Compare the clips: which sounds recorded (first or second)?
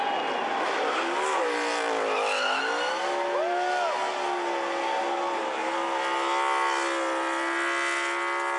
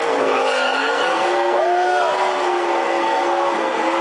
first